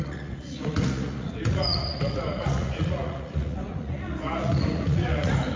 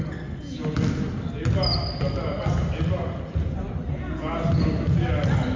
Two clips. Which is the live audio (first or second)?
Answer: second